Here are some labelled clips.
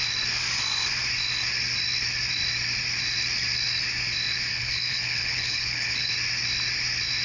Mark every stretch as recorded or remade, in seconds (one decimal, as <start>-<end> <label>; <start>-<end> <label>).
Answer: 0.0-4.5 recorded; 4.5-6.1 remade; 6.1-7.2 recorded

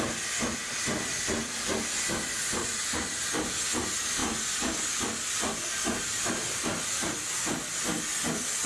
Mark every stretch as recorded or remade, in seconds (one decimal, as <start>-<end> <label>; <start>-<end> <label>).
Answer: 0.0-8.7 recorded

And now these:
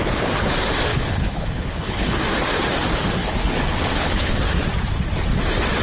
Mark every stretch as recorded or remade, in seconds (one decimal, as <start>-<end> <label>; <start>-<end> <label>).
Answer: 0.0-0.9 recorded; 0.9-2.2 remade; 2.2-3.2 recorded; 3.2-4.5 remade; 4.5-5.8 recorded

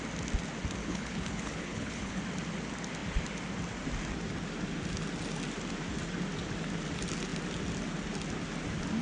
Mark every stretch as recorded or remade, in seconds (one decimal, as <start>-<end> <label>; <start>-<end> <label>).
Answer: 0.0-0.8 recorded; 0.8-2.2 remade; 2.2-9.0 recorded

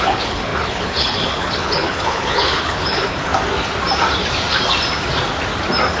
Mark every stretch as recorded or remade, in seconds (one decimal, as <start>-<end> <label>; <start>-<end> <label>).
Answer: 0.0-3.3 remade; 3.3-6.0 recorded

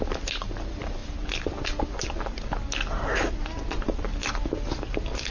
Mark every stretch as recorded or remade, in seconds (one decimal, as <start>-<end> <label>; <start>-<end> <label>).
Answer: 0.0-5.3 recorded

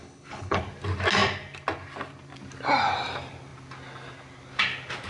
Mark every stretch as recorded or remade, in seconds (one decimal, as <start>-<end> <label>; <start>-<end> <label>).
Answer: 0.0-0.6 remade; 0.6-5.1 recorded

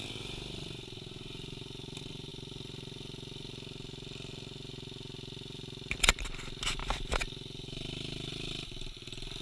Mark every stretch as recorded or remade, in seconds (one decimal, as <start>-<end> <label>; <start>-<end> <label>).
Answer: 0.0-9.4 recorded